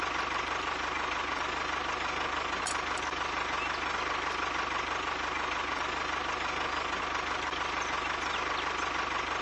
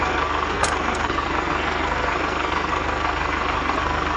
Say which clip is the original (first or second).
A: first